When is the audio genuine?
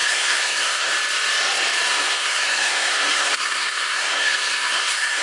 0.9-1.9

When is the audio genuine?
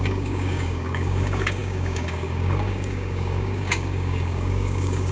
none